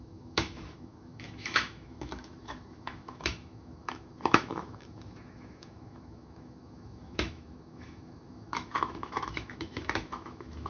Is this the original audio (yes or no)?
no